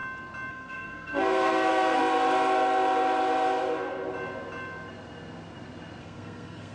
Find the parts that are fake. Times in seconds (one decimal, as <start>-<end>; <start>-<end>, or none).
0.5-2.0; 6.0-6.7